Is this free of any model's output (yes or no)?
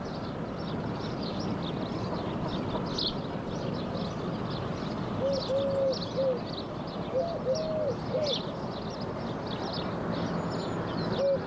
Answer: yes